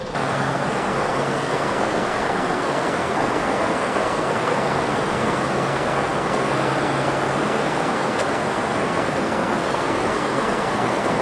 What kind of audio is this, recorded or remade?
remade